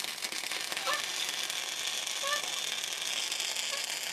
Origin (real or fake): real